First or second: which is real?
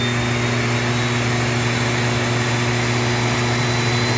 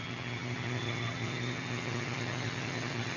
first